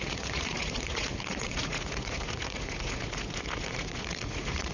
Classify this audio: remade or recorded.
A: remade